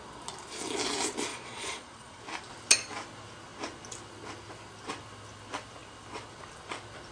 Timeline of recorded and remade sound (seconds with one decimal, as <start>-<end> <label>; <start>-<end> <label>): 0.0-1.3 recorded; 1.3-2.2 remade; 2.2-7.1 recorded